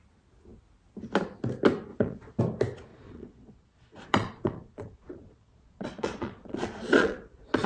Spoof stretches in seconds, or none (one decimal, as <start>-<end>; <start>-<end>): 1.9-2.4; 2.9-7.7